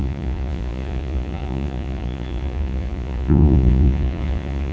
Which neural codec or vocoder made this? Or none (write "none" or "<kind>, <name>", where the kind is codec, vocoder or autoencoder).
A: vocoder, Vocos